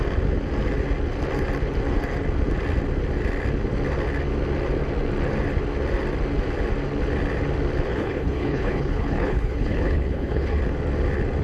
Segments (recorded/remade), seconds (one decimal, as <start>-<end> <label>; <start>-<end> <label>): 0.0-7.9 recorded; 7.9-10.6 remade; 10.6-11.4 recorded